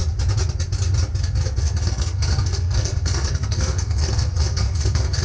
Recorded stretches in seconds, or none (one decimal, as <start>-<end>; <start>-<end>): 0.0-1.2